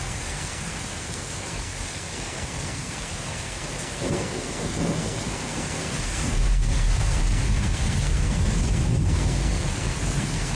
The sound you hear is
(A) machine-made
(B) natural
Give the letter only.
A